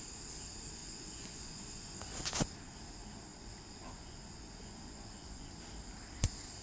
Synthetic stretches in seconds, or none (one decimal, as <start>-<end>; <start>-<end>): 0.8-2.0; 3.3-5.5